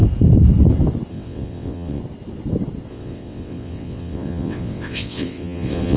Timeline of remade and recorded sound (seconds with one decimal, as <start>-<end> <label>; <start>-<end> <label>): 0.0-1.1 recorded; 1.1-2.0 remade; 2.0-2.9 recorded; 2.9-6.0 remade